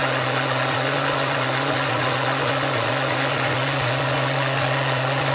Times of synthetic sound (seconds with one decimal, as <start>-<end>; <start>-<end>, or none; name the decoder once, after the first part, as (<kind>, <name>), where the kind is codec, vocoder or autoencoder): 0.0-5.3 (vocoder, Vocos)